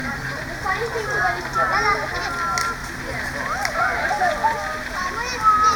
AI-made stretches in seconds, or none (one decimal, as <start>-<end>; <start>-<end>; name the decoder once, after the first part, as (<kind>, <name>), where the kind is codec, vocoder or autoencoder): 0.0-1.4 (vocoder, BigVGAN v2); 2.8-4.3